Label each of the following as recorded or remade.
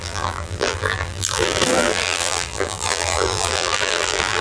remade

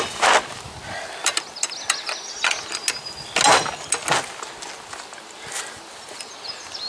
recorded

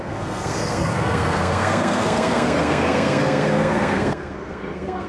remade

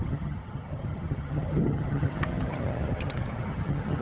remade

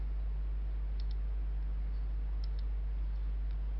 recorded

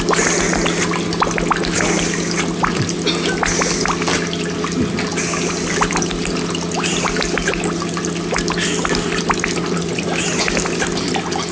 recorded